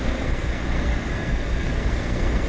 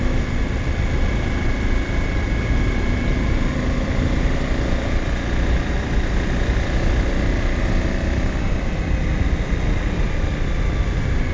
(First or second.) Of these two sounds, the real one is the second